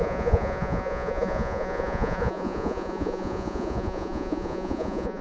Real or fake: fake